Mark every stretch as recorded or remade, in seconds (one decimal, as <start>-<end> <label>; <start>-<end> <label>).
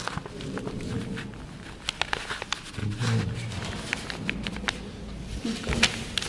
0.0-6.3 recorded